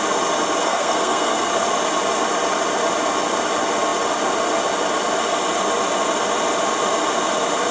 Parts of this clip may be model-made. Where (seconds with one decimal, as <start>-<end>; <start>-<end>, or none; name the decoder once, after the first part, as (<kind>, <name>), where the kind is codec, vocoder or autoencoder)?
0.6-1.5 (codec, SNAC)